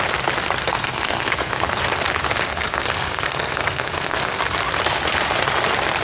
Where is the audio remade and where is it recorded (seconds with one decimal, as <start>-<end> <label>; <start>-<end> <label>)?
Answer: 0.0-0.6 recorded; 0.6-1.8 remade; 1.8-2.5 recorded; 2.5-4.4 remade; 4.4-6.0 recorded